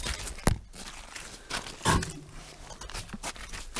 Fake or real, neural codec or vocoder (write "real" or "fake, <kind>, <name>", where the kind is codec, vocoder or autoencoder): real